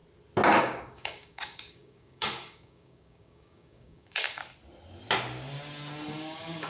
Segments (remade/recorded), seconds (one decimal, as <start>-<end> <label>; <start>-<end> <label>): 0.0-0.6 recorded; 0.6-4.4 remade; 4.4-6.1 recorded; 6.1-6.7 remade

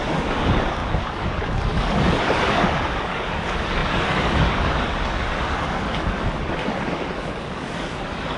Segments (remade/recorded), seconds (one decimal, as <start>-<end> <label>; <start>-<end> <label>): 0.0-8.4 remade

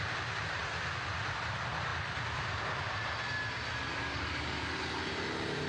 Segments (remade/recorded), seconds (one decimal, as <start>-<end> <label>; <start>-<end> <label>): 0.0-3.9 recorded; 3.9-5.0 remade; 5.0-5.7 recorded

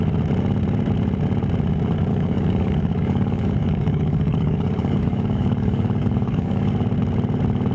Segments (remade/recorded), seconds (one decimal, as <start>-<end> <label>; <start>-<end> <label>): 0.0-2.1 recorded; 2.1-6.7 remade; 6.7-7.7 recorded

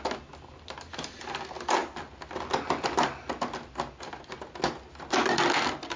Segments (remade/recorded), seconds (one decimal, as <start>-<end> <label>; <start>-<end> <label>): 0.0-6.0 recorded